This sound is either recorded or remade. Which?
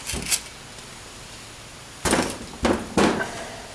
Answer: recorded